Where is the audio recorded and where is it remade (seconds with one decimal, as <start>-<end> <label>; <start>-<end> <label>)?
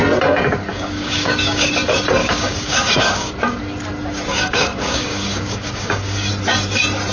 0.0-0.7 recorded; 0.7-1.7 remade; 1.7-2.2 recorded; 2.2-3.3 remade; 3.3-4.3 recorded; 4.3-6.3 remade; 6.3-7.1 recorded